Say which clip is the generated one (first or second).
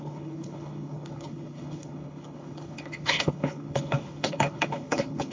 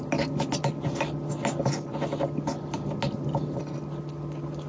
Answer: first